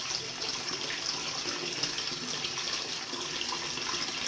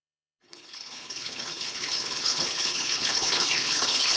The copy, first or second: second